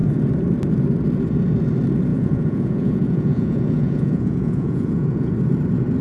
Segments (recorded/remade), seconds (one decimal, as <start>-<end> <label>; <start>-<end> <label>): 0.0-2.1 recorded; 2.1-5.3 remade; 5.3-6.0 recorded